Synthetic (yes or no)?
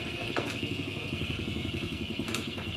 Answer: yes